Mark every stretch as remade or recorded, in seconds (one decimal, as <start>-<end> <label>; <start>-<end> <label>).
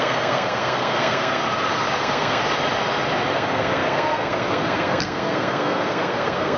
0.0-1.4 remade; 1.4-2.0 recorded; 2.0-2.4 remade; 2.4-3.3 recorded; 3.3-6.6 remade